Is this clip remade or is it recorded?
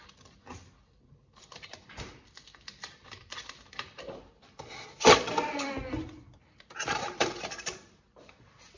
remade